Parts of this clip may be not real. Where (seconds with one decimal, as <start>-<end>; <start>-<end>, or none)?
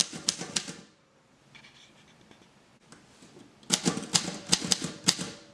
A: none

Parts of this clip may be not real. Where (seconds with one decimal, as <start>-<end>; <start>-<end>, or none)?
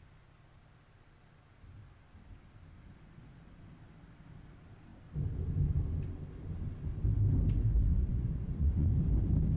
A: 7.9-9.0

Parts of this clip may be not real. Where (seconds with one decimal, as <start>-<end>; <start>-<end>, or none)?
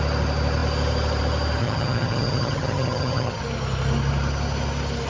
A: 1.6-3.4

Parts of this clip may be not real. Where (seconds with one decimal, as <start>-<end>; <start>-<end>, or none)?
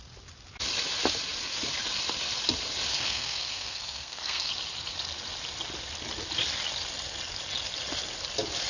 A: 2.9-4.5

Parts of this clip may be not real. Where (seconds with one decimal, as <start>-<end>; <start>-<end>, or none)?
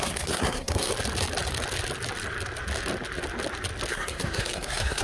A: 0.0-0.9; 3.9-5.0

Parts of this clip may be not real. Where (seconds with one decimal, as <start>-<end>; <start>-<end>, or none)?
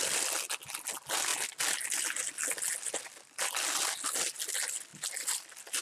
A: 4.9-5.8